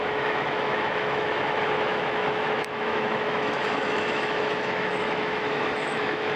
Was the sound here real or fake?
fake